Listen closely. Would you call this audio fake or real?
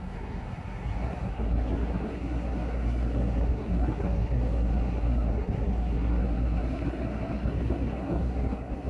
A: fake